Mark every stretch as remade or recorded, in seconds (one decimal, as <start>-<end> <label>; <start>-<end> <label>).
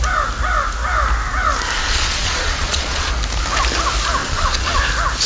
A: 0.0-1.8 recorded; 1.8-3.1 remade; 3.1-4.2 recorded; 4.2-4.8 remade; 4.8-5.3 recorded